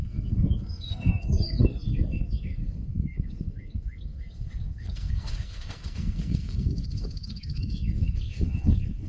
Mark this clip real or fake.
fake